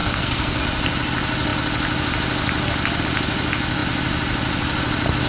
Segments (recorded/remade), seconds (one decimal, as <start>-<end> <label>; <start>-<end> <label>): 0.0-0.6 remade; 0.6-5.3 recorded